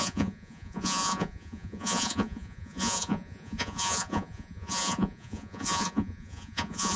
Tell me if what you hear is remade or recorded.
remade